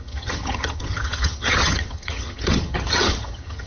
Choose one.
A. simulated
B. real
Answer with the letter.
A